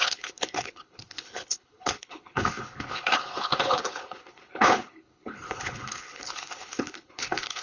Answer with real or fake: fake